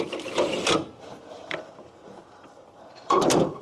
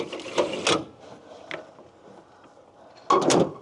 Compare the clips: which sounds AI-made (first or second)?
first